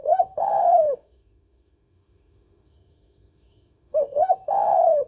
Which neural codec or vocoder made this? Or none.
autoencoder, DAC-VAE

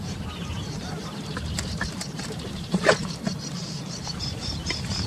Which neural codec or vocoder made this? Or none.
vocoder, BigVGAN v2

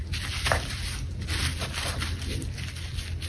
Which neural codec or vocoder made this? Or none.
none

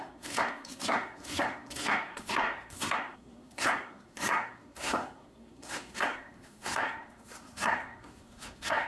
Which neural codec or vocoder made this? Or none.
codec, SNAC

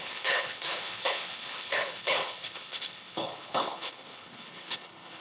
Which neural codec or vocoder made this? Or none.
codec, HILCodec